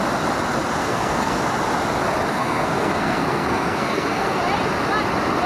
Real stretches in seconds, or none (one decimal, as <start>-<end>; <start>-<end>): 0.0-0.8; 1.4-2.3; 4.4-5.5